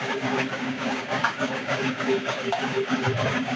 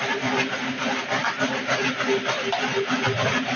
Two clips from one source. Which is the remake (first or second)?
first